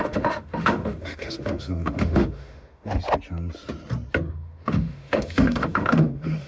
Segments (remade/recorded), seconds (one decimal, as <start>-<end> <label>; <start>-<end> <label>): 0.0-3.0 remade; 3.0-4.3 recorded; 4.3-6.5 remade